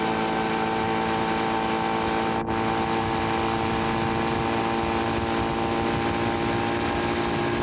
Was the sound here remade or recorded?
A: recorded